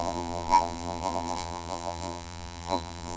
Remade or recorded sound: remade